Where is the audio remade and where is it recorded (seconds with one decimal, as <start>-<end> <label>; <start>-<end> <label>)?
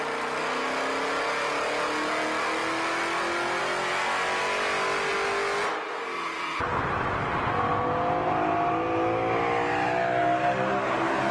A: 0.0-11.3 recorded